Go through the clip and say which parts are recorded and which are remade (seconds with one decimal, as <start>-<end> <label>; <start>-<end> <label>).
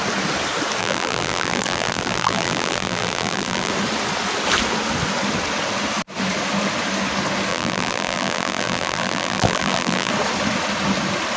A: 0.0-0.8 recorded; 0.8-3.7 remade; 3.7-7.5 recorded; 7.5-10.1 remade; 10.1-11.4 recorded